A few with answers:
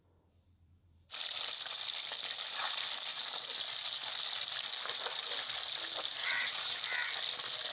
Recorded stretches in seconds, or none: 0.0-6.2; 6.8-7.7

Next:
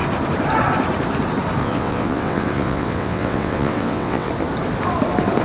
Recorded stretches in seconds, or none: 0.0-1.6; 4.3-5.4

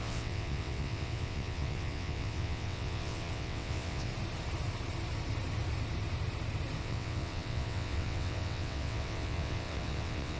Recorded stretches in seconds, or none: 4.1-6.8

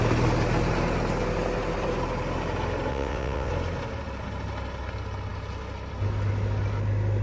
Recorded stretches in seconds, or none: 0.0-2.9; 3.5-7.2

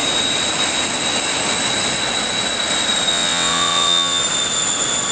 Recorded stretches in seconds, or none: 0.0-3.1; 4.2-5.1

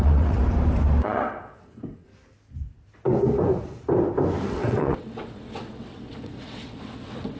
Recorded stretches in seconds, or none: 0.4-1.0; 2.1-4.5

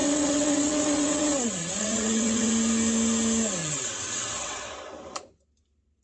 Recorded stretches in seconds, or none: 2.5-3.6; 4.7-6.0

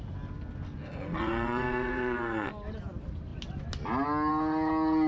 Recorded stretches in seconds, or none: 0.0-1.1; 2.5-5.1